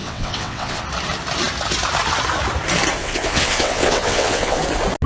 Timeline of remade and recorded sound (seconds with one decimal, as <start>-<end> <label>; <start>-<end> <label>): 0.0-0.8 remade; 0.8-3.0 recorded; 3.0-4.6 remade; 4.6-5.1 recorded